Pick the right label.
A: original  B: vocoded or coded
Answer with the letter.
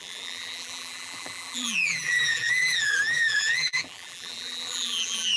B